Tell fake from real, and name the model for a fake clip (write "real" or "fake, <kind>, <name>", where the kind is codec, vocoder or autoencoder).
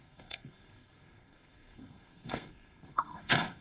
fake, codec, SNAC